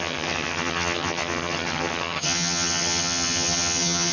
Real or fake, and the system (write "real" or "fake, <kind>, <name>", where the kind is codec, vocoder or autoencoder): fake, vocoder, HiFi-GAN